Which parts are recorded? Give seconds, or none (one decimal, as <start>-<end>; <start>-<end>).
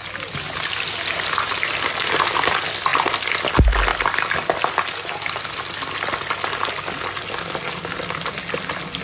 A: 0.0-9.0